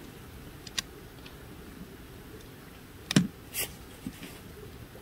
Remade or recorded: recorded